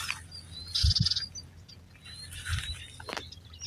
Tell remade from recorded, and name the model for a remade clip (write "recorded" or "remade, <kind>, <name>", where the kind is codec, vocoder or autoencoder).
recorded